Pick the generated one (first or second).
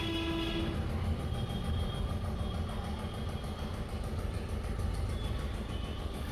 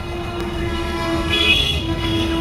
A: second